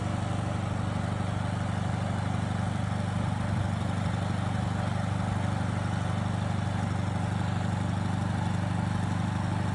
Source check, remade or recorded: recorded